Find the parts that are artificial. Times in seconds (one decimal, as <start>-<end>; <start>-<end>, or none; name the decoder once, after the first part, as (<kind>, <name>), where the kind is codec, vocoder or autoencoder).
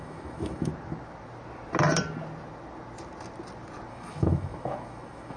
0.0-0.7 (autoencoder, DAC-VAE); 3.9-5.4